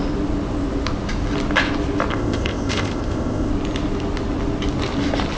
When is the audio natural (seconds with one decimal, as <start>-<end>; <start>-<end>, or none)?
0.0-2.1; 3.5-5.4